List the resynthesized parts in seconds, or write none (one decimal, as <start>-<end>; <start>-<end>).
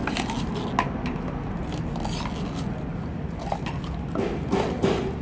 none